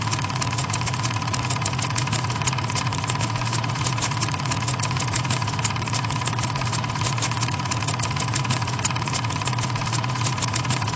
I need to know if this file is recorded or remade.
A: remade